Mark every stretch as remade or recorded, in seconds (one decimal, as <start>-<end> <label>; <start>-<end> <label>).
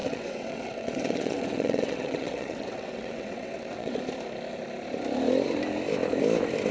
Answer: 0.0-4.0 remade; 4.0-6.7 recorded